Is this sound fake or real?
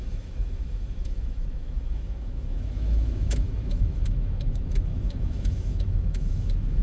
fake